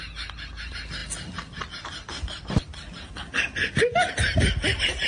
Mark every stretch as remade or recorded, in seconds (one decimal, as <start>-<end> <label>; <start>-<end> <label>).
0.0-5.1 recorded